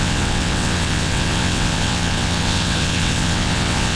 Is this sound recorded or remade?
remade